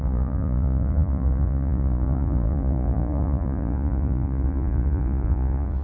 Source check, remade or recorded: remade